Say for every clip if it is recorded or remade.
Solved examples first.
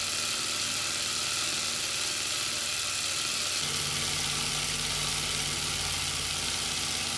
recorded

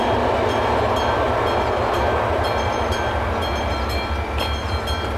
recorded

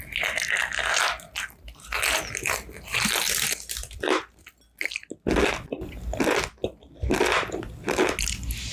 recorded